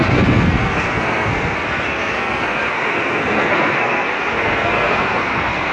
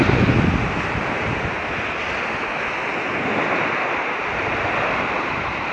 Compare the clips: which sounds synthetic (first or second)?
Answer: first